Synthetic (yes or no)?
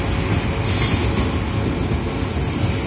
no